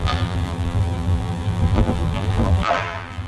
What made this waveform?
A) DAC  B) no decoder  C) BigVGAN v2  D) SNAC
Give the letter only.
C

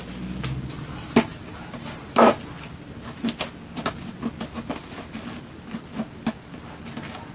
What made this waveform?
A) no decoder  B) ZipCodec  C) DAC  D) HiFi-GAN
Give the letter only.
A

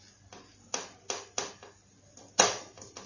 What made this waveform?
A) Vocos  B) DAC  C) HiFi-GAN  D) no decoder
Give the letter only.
D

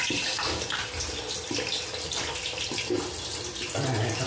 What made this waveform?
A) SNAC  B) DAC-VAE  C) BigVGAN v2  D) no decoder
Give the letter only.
D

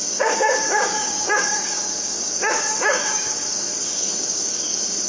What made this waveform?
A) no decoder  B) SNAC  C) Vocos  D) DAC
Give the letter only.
D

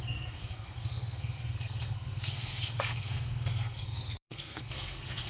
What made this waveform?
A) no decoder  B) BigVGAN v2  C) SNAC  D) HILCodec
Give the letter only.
C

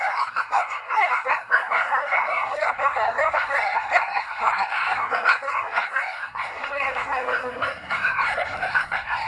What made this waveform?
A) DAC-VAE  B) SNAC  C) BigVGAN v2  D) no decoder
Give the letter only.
B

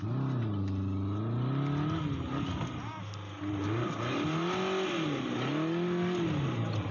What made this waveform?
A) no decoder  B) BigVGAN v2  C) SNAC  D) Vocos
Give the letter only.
A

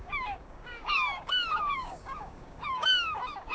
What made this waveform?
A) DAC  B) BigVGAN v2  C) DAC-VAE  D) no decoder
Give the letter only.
A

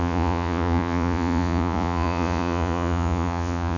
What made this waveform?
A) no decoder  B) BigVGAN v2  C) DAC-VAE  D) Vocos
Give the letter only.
D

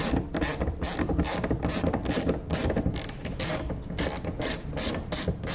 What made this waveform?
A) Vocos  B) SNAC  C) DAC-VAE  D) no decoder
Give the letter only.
D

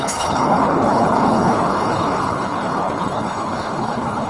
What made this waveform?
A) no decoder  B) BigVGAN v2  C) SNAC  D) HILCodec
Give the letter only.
D